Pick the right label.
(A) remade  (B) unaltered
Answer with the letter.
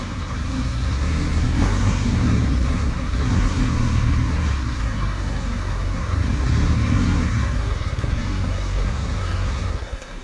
A